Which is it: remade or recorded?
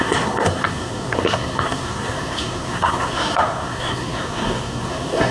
remade